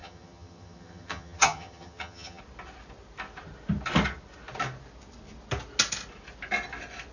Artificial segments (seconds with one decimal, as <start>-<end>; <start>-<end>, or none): 0.0-2.4

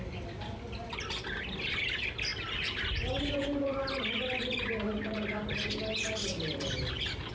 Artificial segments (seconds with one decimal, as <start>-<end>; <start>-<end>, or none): none

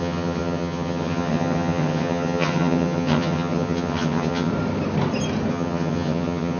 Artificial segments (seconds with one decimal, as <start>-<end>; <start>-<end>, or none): 0.0-4.5; 5.5-6.6